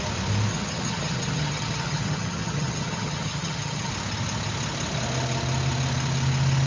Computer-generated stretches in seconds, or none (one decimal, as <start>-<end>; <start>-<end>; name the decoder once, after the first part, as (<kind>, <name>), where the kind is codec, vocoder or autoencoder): 0.5-3.9 (vocoder, HiFi-GAN)